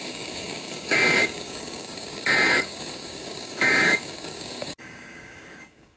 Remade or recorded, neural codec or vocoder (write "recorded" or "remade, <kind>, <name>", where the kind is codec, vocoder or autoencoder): remade, codec, DAC